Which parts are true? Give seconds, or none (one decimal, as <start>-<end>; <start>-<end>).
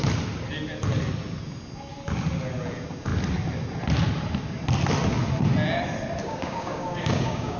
0.0-6.2